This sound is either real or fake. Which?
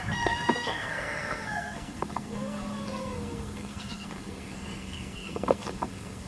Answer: fake